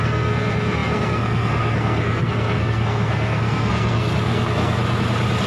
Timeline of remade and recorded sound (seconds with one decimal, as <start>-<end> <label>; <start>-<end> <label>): 0.0-4.8 remade; 4.8-5.5 recorded